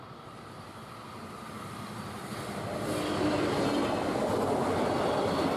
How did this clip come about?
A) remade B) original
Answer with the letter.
B